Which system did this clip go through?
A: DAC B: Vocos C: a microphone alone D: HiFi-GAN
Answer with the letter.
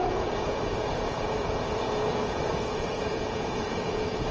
B